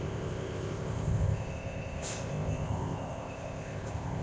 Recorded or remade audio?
remade